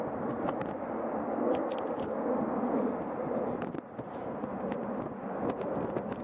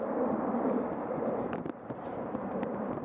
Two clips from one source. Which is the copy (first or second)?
second